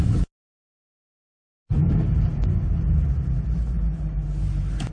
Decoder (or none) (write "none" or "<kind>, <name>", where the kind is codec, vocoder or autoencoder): none